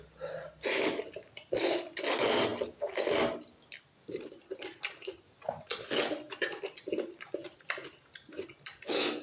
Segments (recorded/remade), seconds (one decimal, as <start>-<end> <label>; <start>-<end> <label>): 0.0-9.2 recorded